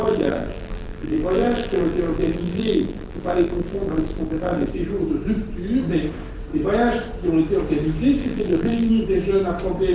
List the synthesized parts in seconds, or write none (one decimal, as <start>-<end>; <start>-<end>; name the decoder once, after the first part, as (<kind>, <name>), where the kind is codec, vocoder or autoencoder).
0.0-4.7 (vocoder, BigVGAN v2); 8.2-8.9